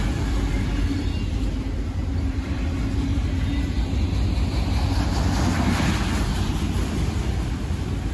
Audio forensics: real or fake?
real